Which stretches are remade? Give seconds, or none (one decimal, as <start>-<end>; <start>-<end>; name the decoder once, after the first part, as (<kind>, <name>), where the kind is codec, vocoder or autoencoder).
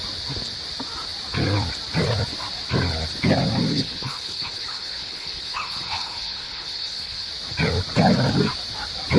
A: 3.7-7.3 (codec, HILCodec)